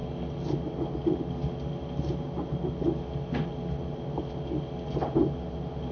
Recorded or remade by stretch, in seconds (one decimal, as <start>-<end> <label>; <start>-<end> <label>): 0.0-5.9 recorded